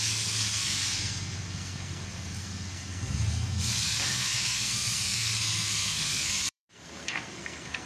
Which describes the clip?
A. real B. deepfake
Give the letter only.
B